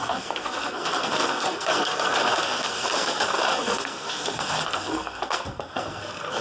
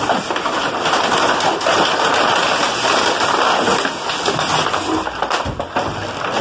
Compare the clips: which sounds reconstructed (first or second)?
first